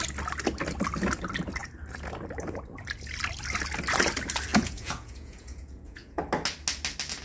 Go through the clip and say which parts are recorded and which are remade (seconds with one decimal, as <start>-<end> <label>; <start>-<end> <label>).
0.0-4.5 recorded; 4.5-6.2 remade; 6.2-7.2 recorded